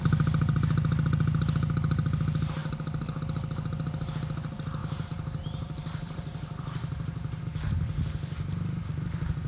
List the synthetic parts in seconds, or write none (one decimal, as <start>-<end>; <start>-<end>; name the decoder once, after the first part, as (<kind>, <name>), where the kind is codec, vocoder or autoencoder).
4.8-7.4 (vocoder, BigVGAN v2)